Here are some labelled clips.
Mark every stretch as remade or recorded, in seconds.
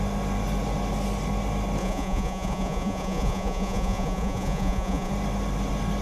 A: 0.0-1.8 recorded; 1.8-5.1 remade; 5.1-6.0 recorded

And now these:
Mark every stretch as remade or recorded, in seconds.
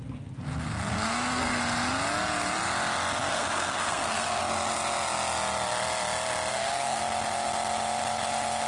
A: 0.0-0.9 recorded; 0.9-1.6 remade; 1.6-3.3 recorded; 3.3-4.4 remade; 4.4-6.5 recorded; 6.5-7.0 remade; 7.0-8.7 recorded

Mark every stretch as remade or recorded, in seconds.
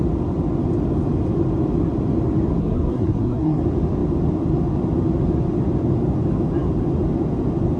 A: 0.0-2.6 recorded; 2.6-3.6 remade; 3.6-7.8 recorded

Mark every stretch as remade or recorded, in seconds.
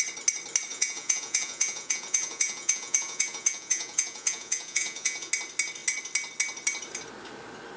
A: 0.0-0.7 recorded; 0.7-5.3 remade; 5.3-7.8 recorded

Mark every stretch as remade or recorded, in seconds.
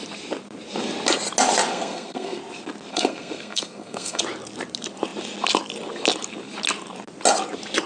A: 0.0-1.7 recorded; 1.7-2.4 remade; 2.4-2.9 recorded; 2.9-4.2 remade; 4.2-7.9 recorded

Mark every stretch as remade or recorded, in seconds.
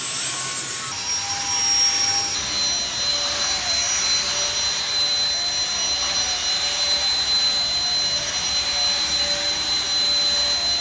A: 0.0-3.1 recorded; 3.1-3.8 remade; 3.8-10.8 recorded